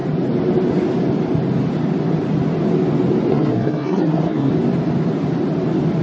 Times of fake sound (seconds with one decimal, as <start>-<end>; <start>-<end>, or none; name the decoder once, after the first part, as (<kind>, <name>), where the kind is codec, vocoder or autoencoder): 3.3-4.5 (codec, SNAC)